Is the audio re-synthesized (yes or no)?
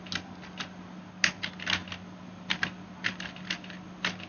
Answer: no